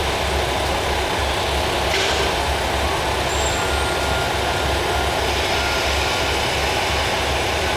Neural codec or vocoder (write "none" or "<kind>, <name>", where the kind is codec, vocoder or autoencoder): none